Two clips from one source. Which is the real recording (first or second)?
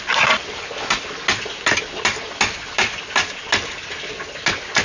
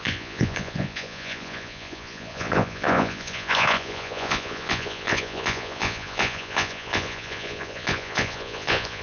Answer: first